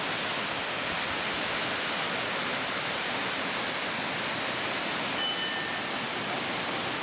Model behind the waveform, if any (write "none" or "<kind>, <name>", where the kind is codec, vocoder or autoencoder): none